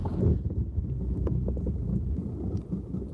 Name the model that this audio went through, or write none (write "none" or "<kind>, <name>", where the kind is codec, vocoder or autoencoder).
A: none